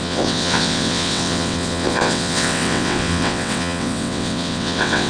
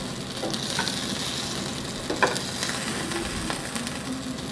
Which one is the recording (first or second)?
second